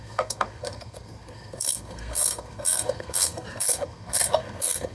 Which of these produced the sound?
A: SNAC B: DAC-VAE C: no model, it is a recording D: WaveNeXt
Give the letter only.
A